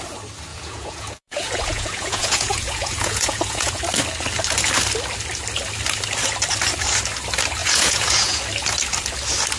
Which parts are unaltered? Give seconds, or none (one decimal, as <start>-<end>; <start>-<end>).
0.0-0.5; 3.8-7.6; 8.4-9.6